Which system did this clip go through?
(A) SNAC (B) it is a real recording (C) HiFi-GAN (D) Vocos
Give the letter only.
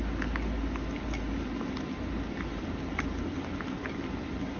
B